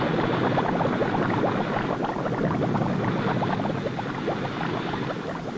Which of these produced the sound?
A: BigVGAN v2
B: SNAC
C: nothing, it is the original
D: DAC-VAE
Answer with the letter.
C